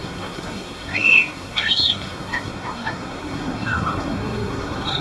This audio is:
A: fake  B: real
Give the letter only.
A